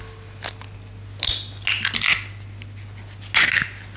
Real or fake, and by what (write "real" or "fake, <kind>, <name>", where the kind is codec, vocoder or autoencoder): real